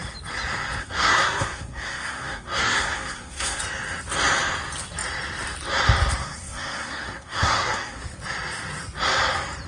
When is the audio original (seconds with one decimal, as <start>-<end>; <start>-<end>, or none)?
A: 0.0-0.8; 3.6-6.2; 8.0-9.7